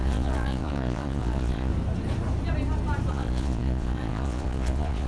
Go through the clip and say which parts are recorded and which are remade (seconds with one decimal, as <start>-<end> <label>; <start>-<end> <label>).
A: 0.0-1.7 remade; 1.7-3.1 recorded; 3.1-5.1 remade